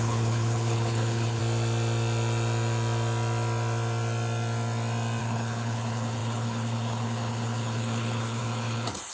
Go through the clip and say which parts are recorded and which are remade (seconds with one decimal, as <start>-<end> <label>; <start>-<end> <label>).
0.0-1.4 remade; 1.4-5.2 recorded; 5.2-9.1 remade